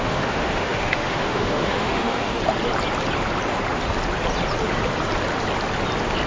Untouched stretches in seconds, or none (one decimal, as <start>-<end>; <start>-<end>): 2.4-6.3